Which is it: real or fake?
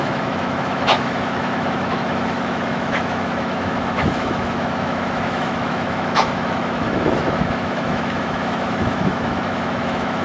fake